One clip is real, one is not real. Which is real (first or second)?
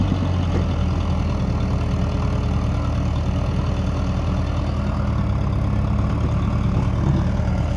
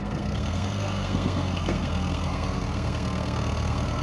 first